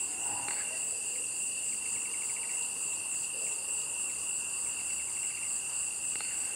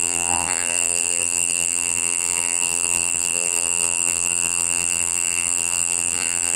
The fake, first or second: second